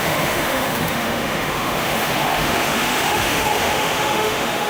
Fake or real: fake